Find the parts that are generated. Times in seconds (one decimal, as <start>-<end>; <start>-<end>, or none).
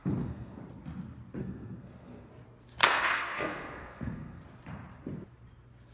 0.0-0.6; 1.4-2.3; 2.8-4.4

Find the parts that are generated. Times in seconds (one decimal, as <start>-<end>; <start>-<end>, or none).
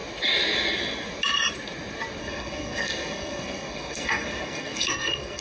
2.2-5.4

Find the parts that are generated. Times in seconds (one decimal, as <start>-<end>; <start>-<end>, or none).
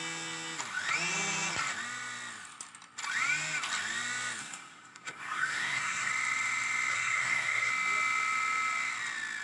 4.4-6.1; 6.9-7.7